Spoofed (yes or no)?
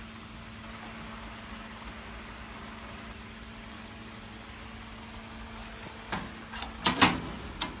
no